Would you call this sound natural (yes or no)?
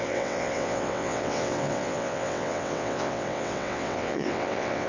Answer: no